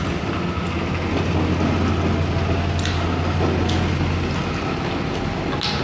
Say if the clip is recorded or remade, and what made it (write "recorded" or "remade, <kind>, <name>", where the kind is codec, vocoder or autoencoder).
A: recorded